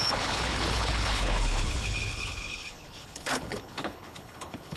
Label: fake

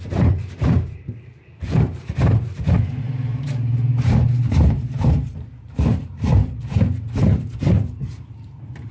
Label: fake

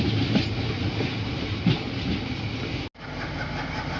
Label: real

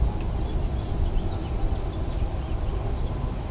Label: real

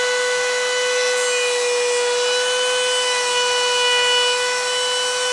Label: real